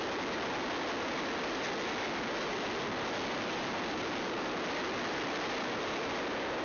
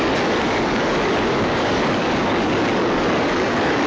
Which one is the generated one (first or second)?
second